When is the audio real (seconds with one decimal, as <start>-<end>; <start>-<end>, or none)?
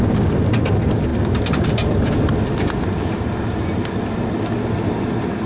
0.0-5.5